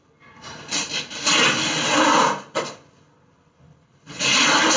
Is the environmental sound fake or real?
real